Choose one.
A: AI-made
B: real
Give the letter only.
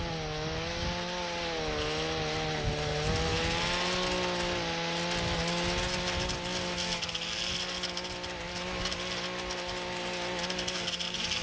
B